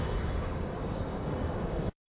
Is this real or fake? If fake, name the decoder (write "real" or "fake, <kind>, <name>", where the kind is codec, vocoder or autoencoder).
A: fake, codec, DAC